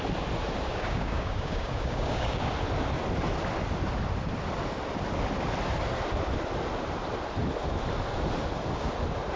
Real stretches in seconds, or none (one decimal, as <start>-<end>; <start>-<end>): 0.0-0.7; 2.5-9.4